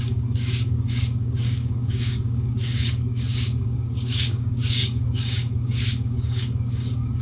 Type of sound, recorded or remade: remade